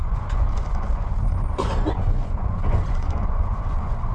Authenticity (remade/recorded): remade